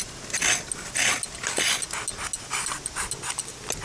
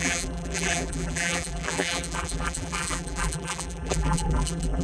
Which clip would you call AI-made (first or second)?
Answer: second